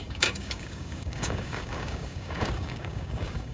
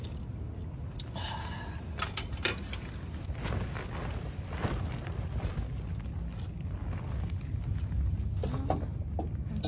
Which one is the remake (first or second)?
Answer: first